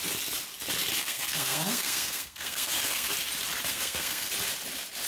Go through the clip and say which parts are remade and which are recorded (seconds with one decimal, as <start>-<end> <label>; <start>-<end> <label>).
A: 0.0-1.0 recorded; 1.0-3.1 remade; 3.1-3.7 recorded; 3.7-4.3 remade; 4.3-5.1 recorded